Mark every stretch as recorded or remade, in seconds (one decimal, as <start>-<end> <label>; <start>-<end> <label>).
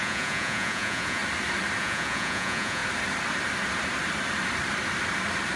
0.0-1.2 remade; 1.2-1.8 recorded; 1.8-2.8 remade; 2.8-5.6 recorded